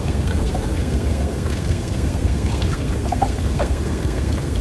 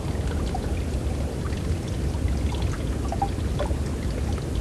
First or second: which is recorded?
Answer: second